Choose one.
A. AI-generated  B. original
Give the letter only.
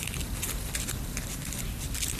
A